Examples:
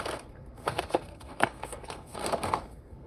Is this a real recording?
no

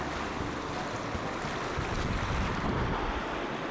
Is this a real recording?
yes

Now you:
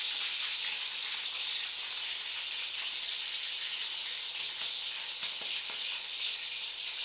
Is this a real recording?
yes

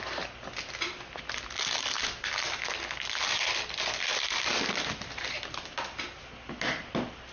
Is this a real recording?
yes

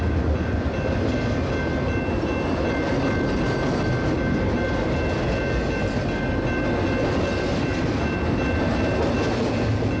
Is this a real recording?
yes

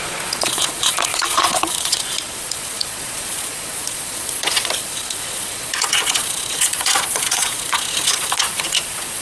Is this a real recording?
no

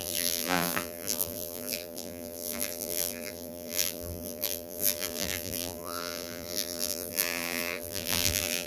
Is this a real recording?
no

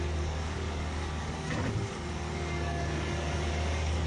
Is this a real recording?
no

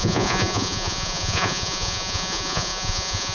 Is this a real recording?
no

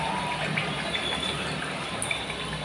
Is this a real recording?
yes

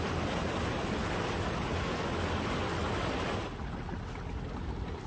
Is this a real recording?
yes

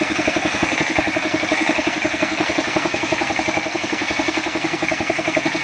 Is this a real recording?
no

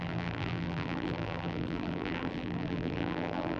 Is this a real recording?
no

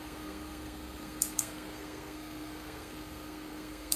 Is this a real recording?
no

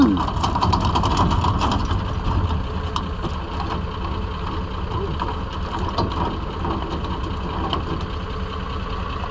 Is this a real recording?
yes